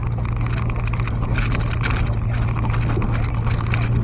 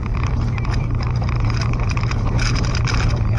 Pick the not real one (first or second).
second